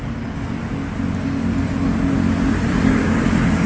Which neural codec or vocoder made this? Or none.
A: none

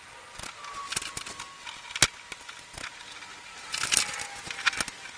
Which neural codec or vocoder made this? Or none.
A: none